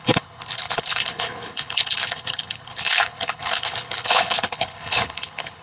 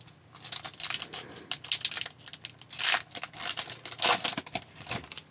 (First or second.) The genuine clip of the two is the second